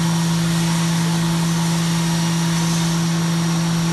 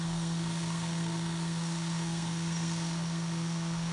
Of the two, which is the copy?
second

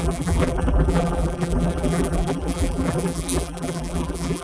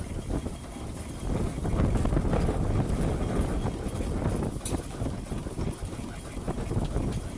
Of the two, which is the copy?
first